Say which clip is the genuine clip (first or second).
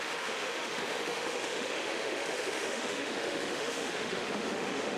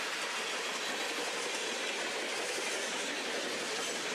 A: second